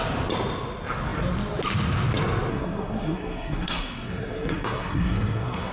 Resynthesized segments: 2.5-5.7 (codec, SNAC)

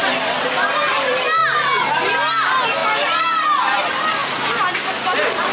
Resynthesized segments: none

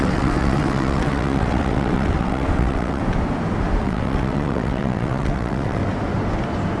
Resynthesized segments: 0.0-3.0 (vocoder, WaveNeXt); 3.8-5.8

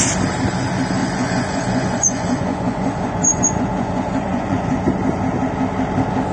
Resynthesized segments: 1.0-4.8 (vocoder, Vocos)

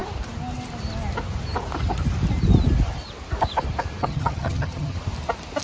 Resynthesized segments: 4.0-5.0 (vocoder, HiFi-GAN)

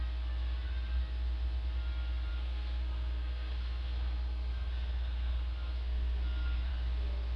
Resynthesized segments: 2.3-6.7 (codec, SNAC)